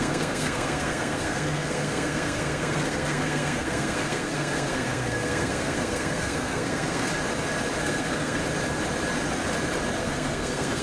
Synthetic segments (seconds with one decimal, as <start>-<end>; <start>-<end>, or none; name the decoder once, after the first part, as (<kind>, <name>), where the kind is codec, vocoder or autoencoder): 0.0-7.1 (codec, SNAC); 7.8-8.4; 10.0-10.8

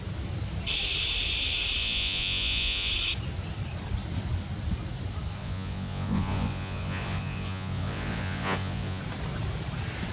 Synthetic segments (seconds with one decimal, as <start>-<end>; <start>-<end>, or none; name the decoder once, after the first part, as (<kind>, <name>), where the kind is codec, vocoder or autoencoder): 1.8-2.9 (vocoder, Vocos); 5.4-9.0

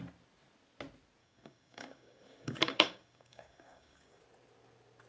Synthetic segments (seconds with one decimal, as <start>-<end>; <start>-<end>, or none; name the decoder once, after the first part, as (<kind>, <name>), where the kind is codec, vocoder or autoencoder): 1.2-4.2 (codec, DAC)